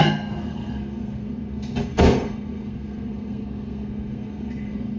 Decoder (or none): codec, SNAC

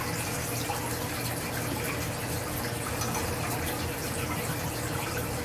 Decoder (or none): none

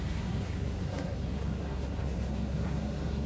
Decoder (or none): codec, SNAC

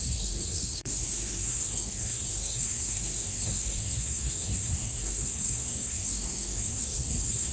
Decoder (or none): codec, SNAC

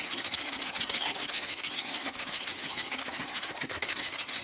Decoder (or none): codec, SNAC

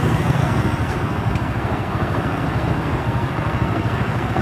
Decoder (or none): codec, SNAC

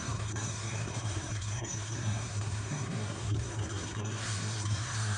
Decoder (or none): codec, SNAC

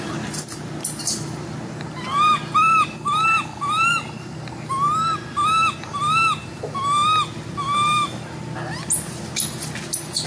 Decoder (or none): none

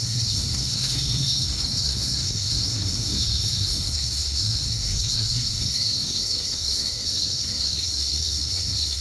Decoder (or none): codec, SNAC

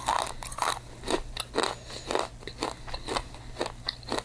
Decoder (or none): none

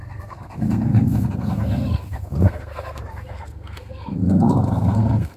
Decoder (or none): codec, SNAC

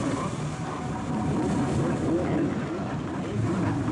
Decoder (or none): none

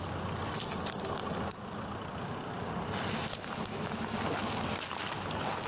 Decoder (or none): none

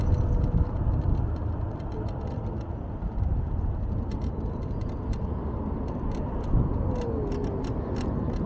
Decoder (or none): none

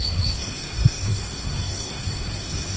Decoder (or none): codec, SNAC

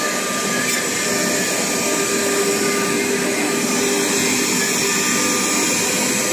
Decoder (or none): none